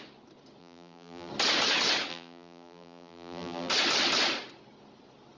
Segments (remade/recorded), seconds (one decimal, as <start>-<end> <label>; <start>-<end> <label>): 0.0-0.6 recorded; 0.6-1.3 remade; 1.3-2.1 recorded; 2.1-3.7 remade; 3.7-5.4 recorded